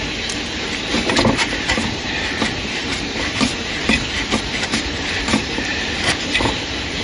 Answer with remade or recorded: remade